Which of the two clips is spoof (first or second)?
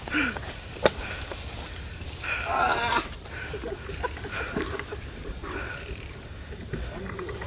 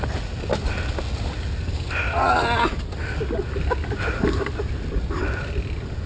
first